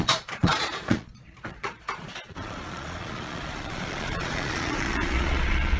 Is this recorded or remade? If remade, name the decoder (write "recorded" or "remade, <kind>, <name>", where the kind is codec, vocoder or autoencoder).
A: remade, vocoder, Vocos